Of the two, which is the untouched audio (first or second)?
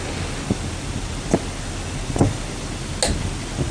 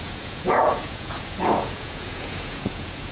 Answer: first